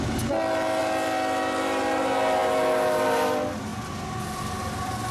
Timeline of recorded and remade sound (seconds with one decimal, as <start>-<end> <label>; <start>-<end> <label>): 0.0-5.1 recorded